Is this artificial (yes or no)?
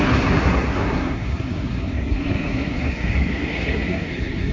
yes